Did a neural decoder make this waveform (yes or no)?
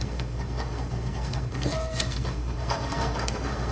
yes